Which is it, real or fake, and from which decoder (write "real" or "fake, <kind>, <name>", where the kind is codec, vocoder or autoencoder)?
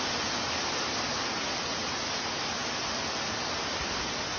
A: real